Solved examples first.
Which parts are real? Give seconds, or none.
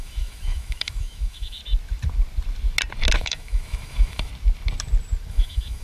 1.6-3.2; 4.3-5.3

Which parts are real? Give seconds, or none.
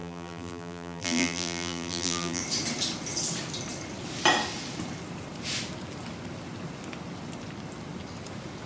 2.4-8.7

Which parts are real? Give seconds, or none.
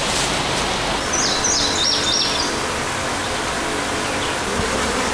0.0-5.1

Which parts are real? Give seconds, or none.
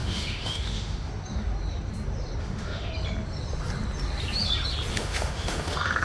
1.1-2.4; 2.9-4.9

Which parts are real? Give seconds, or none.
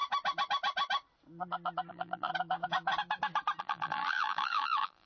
0.0-1.9; 2.3-3.6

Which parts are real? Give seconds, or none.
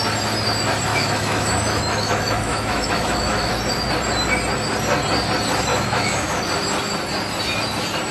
0.0-0.9; 3.5-5.7; 6.4-8.1